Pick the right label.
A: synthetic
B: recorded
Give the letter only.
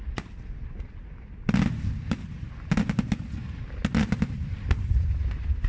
B